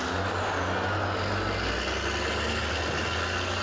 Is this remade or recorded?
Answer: recorded